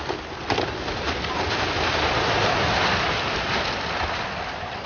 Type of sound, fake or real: fake